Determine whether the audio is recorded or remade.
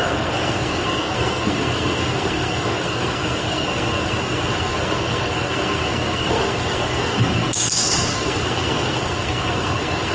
remade